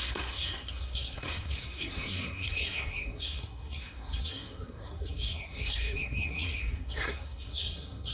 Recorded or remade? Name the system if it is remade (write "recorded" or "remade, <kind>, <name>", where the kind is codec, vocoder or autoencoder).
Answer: remade, codec, SNAC